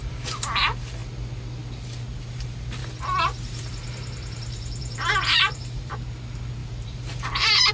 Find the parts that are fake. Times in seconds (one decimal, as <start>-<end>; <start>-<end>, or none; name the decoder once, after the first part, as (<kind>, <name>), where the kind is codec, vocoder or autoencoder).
0.0-0.6 (vocoder, BigVGAN v2); 2.8-5.9; 6.6-7.7